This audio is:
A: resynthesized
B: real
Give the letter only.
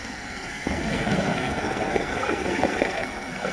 A